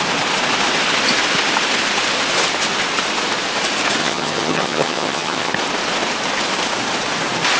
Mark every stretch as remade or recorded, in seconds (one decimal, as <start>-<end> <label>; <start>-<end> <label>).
0.0-4.0 recorded; 4.0-5.5 remade; 5.5-7.6 recorded